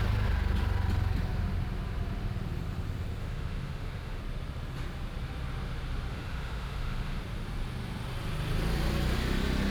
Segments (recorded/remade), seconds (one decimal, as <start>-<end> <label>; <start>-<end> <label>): 0.0-3.2 recorded; 3.2-4.2 remade; 4.2-6.1 recorded; 6.1-7.2 remade; 7.2-9.7 recorded

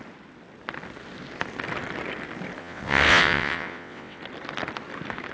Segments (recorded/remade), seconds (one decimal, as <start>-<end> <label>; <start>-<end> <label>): 0.0-2.6 recorded; 2.6-4.2 remade; 4.2-5.3 recorded

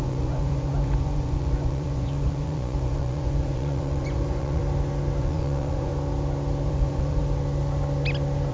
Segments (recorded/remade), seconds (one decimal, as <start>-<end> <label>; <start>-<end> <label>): 0.0-4.6 remade; 4.6-5.2 recorded; 5.2-5.9 remade; 5.9-6.7 recorded; 6.7-7.2 remade; 7.2-8.5 recorded